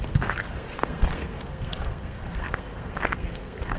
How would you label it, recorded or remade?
remade